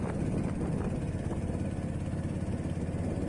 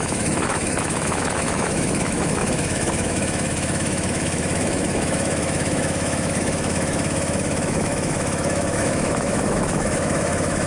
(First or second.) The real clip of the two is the first